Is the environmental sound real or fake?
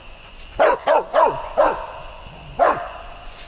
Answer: fake